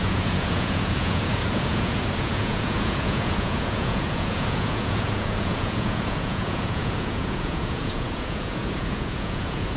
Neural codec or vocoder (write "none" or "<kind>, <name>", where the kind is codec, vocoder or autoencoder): vocoder, Vocos